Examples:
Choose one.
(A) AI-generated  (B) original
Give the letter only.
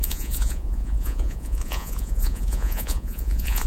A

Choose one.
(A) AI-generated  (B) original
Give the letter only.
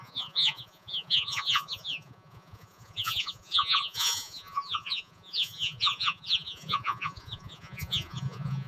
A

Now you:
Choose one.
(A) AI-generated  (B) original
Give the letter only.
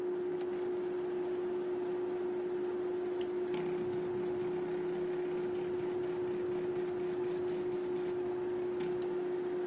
B